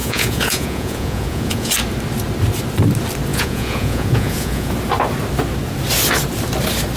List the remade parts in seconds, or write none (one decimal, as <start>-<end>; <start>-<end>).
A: 0.0-1.7; 3.3-4.7